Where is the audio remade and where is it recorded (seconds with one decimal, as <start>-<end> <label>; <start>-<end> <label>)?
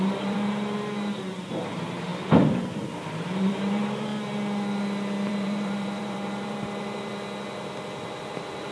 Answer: 0.0-2.1 remade; 2.1-2.9 recorded; 2.9-4.1 remade; 4.1-5.3 recorded; 5.3-7.1 remade; 7.1-8.2 recorded; 8.2-8.7 remade